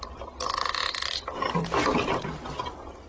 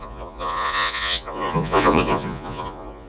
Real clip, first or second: first